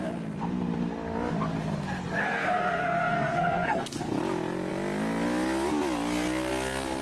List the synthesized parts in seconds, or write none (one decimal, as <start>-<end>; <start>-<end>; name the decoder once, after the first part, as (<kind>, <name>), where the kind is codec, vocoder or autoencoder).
2.2-4.0 (codec, SNAC)

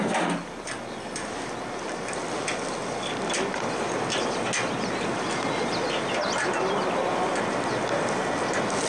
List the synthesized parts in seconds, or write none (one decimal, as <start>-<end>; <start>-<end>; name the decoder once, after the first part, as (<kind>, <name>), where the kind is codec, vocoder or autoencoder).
none

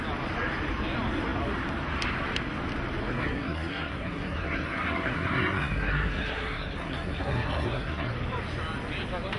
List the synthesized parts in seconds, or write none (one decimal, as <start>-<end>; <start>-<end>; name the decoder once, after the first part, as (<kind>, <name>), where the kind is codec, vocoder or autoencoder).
3.0-8.1 (codec, SNAC)

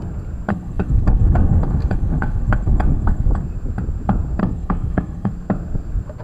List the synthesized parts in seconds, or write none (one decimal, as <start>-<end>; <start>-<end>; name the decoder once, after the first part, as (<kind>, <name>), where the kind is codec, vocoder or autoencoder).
0.5-3.3 (codec, SNAC); 4.4-5.3

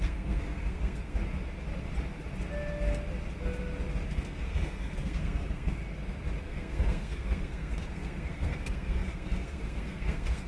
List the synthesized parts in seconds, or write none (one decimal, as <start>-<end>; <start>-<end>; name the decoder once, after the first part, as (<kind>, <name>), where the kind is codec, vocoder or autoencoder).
0.0-1.2 (codec, SNAC); 4.1-5.8; 6.4-10.5